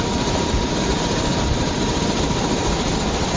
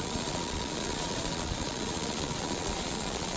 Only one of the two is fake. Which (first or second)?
second